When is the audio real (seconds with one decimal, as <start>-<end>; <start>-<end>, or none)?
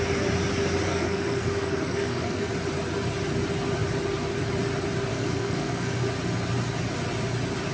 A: 0.0-0.9; 2.5-5.1; 6.0-7.7